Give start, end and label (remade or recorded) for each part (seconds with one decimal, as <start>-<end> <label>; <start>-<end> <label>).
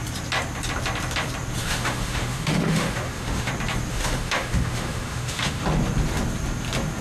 0.0-1.6 recorded; 1.6-3.5 remade; 3.5-3.9 recorded; 3.9-5.6 remade; 5.6-7.0 recorded